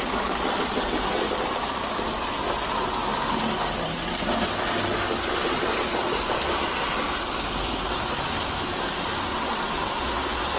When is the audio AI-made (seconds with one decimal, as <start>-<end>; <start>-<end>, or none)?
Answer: 9.3-9.9

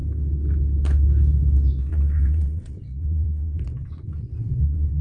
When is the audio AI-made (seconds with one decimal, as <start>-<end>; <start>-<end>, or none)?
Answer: 1.9-5.0

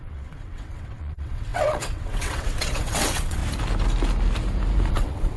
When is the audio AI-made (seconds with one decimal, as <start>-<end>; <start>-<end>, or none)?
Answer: 0.0-3.4; 4.9-5.4

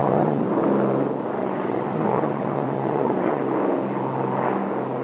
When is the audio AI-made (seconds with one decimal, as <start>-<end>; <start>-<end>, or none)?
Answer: 0.0-0.5; 1.4-3.4